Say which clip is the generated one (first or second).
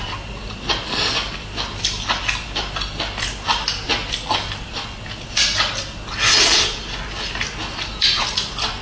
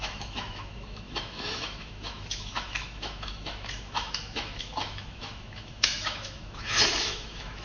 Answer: second